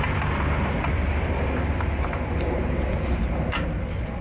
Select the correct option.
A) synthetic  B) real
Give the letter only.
B